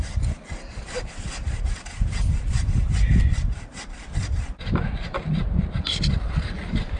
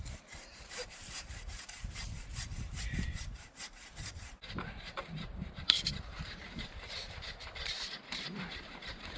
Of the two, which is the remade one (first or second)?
second